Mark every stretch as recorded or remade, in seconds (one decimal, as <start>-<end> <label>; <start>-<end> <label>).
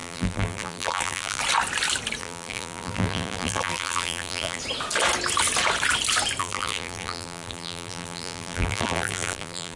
0.0-1.4 remade; 1.4-2.2 recorded; 2.2-4.6 remade; 4.6-6.4 recorded; 6.4-9.8 remade